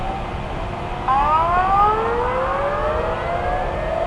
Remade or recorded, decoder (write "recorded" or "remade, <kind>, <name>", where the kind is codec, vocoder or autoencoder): recorded